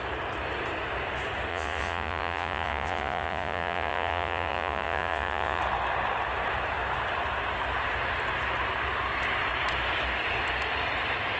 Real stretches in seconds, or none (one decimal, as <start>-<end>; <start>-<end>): 0.0-1.5; 5.6-11.4